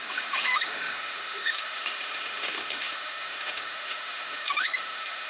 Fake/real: fake